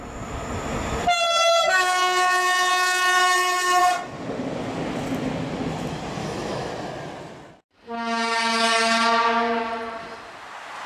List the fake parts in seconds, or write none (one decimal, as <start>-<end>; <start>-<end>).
1.4-3.8; 6.2-6.7